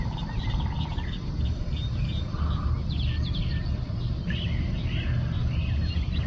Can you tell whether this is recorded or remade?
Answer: recorded